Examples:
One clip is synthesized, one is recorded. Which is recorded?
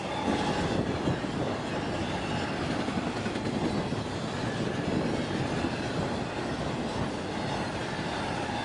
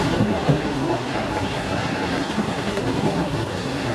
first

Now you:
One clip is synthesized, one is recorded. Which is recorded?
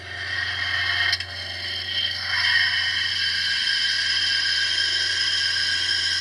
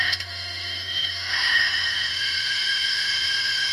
first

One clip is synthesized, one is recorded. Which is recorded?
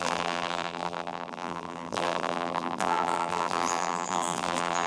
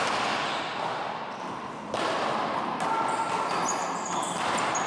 second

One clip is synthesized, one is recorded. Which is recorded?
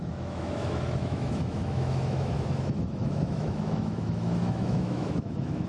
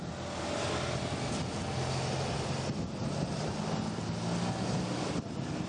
second